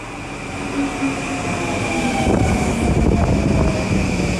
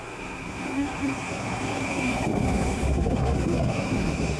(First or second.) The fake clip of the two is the second